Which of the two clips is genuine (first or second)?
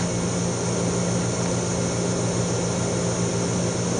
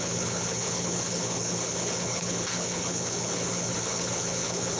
first